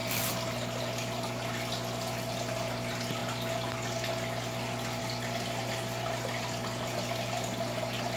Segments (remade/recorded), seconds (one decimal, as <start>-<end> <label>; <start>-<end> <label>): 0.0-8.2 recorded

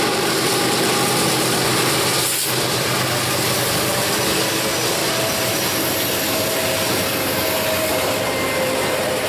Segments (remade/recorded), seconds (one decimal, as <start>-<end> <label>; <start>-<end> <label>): 0.0-9.3 recorded

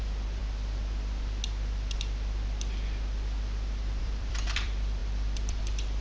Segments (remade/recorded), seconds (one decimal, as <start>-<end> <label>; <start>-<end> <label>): 0.0-0.4 remade; 0.4-4.0 recorded; 4.0-6.0 remade

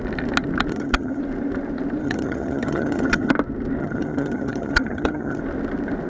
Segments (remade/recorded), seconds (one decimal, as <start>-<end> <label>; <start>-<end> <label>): 0.0-0.7 recorded; 0.7-1.2 remade; 1.2-2.0 recorded; 2.0-3.3 remade; 3.3-3.8 recorded; 3.8-5.4 remade; 5.4-6.1 recorded

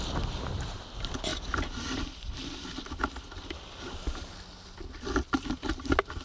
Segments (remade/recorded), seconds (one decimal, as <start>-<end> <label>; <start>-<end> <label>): 0.0-6.2 recorded

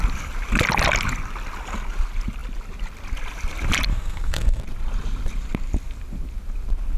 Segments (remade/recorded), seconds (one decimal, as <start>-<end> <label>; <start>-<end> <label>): 0.0-3.9 recorded; 3.9-4.6 remade; 4.6-7.0 recorded

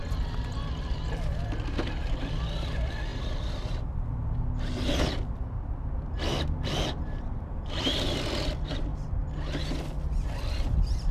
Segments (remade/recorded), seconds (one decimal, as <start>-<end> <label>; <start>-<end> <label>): 0.0-11.1 recorded